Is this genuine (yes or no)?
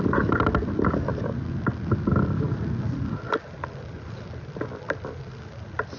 yes